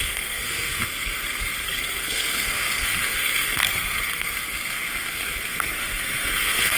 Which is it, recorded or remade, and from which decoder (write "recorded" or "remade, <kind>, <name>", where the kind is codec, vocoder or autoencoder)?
remade, codec, SNAC